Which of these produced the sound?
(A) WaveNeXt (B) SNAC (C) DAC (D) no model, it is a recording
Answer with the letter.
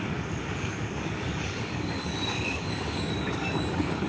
C